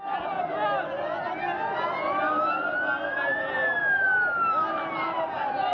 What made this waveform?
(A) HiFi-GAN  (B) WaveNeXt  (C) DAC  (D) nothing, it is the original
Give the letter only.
D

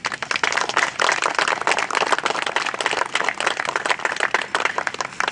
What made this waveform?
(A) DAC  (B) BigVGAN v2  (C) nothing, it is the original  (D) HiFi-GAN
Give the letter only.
C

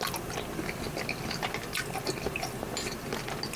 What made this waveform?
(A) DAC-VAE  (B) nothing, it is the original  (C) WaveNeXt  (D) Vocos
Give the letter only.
B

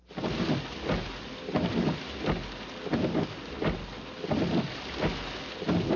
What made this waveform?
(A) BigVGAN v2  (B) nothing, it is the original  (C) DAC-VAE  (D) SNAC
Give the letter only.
B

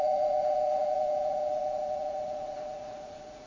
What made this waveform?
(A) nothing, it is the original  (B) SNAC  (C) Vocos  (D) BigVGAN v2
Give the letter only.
C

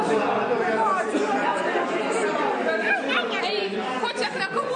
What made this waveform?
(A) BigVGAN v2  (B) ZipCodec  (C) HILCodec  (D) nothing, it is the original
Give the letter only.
A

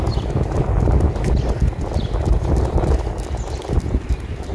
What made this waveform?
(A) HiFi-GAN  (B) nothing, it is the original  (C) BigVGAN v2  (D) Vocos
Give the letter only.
B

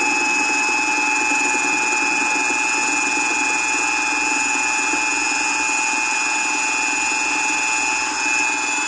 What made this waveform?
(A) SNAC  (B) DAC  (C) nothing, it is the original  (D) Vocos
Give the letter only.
C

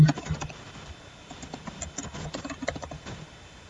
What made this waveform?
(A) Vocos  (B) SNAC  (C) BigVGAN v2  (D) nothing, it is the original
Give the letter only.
D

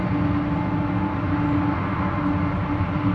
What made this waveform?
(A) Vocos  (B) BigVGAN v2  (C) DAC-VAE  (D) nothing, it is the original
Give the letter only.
D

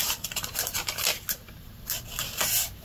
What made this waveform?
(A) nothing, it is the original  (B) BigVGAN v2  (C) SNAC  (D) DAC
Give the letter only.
A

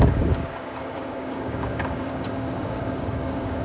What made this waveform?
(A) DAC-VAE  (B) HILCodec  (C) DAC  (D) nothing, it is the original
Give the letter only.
C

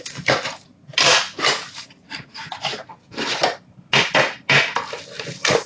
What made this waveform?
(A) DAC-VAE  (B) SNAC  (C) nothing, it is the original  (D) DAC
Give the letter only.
C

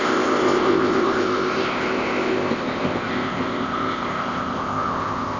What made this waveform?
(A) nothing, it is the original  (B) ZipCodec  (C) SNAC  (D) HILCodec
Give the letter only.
B